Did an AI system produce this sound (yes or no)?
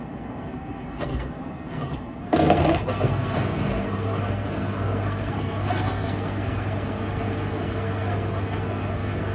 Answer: yes